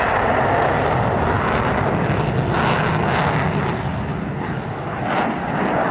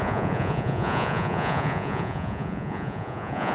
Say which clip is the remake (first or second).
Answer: second